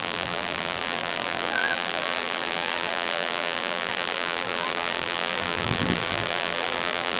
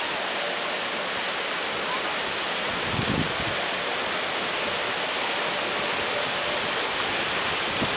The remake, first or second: first